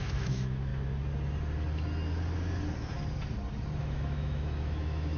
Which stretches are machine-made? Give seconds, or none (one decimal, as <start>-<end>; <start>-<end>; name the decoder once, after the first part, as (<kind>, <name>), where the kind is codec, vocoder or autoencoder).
0.0-0.7 (autoencoder, DAC-VAE); 3.8-5.2